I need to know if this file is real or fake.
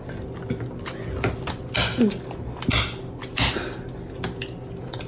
real